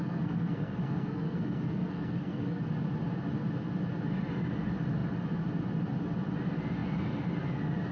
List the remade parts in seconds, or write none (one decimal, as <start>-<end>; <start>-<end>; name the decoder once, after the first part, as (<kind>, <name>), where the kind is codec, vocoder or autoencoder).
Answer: 0.0-2.6 (codec, SNAC)